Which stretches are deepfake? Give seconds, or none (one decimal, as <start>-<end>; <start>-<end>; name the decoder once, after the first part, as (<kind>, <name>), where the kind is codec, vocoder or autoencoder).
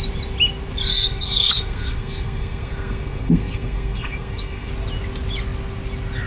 0.9-4.7 (codec, SNAC)